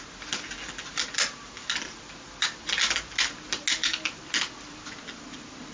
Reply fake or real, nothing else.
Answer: real